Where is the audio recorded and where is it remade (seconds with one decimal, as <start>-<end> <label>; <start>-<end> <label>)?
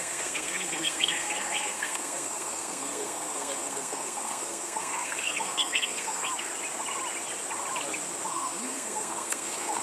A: 0.0-6.5 remade; 6.5-8.3 recorded; 8.3-9.8 remade